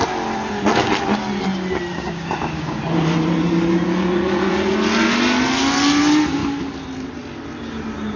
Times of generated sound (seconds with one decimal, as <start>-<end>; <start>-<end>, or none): 1.9-2.8